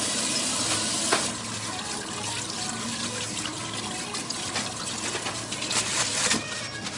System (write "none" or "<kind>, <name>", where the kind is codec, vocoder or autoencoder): none